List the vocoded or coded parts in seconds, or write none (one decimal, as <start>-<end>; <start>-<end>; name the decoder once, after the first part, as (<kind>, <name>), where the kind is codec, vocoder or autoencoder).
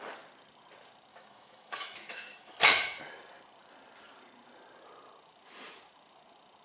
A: 1.1-3.0 (autoencoder, DAC-VAE)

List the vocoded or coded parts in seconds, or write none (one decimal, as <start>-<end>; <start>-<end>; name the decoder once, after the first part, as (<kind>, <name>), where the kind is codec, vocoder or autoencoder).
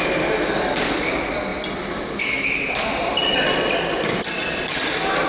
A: none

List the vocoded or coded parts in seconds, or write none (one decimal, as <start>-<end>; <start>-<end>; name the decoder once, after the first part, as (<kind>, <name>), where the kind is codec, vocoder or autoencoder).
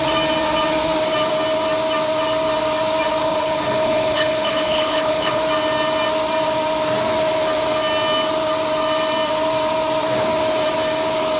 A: 3.2-5.4 (codec, HILCodec)